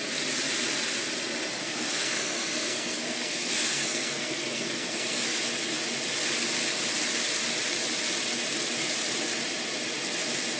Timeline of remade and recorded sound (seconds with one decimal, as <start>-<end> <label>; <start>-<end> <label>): 0.0-1.6 recorded; 1.6-5.4 remade; 5.4-10.6 recorded